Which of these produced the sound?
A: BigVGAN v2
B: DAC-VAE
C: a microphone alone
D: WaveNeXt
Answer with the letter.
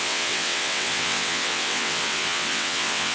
D